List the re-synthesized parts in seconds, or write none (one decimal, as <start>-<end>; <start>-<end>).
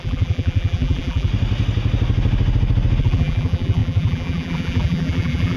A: 0.0-1.3; 3.0-5.6